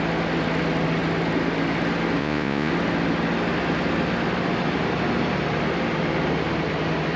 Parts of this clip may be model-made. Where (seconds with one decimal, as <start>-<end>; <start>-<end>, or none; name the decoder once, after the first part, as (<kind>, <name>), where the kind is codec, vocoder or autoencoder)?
2.2-2.7 (vocoder, Vocos)